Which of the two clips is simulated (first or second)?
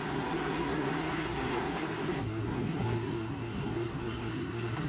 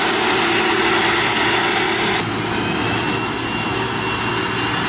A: first